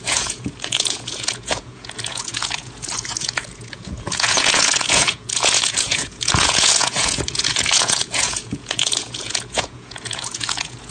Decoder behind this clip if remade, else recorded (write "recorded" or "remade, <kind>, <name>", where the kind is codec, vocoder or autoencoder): remade, vocoder, Vocos